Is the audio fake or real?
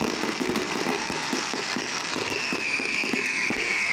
fake